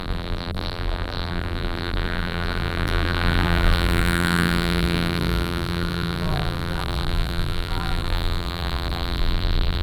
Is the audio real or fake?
fake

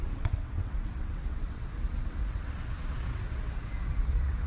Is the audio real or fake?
fake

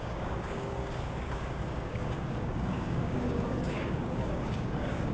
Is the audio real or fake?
fake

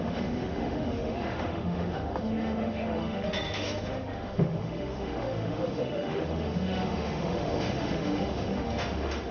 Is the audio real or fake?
fake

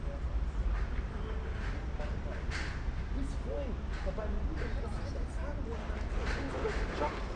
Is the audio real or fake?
real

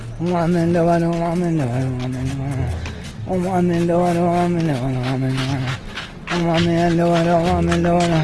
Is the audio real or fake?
real